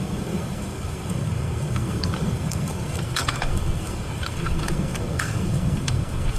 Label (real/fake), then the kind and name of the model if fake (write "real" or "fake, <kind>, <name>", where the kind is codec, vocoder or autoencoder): fake, codec, SNAC